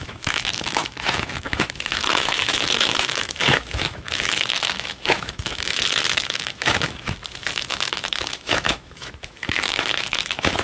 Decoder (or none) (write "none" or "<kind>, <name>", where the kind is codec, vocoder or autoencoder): autoencoder, DAC-VAE